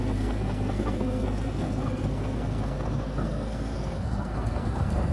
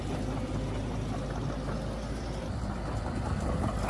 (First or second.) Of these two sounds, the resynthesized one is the first